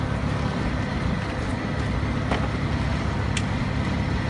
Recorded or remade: recorded